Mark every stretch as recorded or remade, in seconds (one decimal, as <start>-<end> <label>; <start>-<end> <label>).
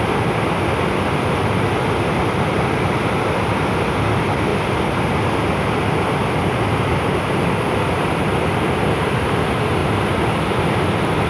0.0-11.3 recorded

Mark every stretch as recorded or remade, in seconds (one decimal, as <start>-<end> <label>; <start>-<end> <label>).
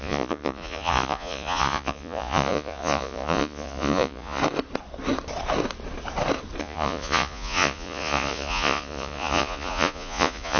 0.0-4.4 remade; 4.4-6.6 recorded; 6.6-10.6 remade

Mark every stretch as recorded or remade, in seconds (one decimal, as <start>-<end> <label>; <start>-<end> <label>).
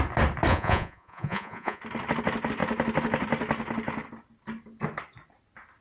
0.0-0.5 recorded; 0.5-1.8 remade; 1.8-5.8 recorded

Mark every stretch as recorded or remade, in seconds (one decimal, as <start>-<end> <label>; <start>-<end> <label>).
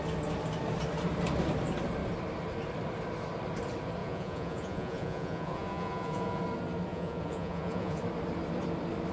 0.0-4.0 recorded; 4.0-6.4 remade; 6.4-6.9 recorded; 6.9-8.0 remade; 8.0-9.1 recorded